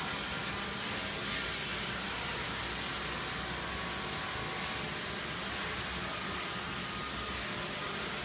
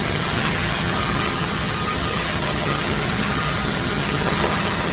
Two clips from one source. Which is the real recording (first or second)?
first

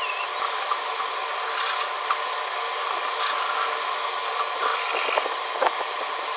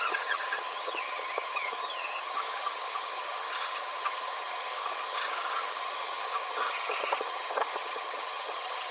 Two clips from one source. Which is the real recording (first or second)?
first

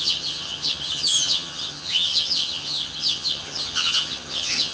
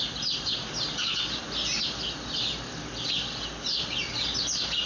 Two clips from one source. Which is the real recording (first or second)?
second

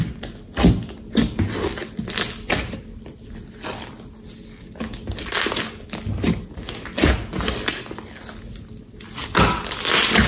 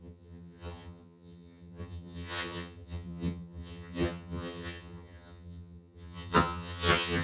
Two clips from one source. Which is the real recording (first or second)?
first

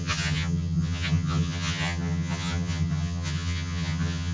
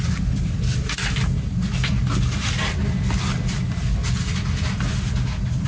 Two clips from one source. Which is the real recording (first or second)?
second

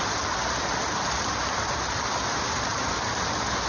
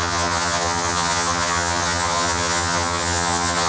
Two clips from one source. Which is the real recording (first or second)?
first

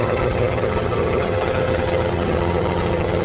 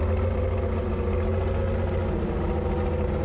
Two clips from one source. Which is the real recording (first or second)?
second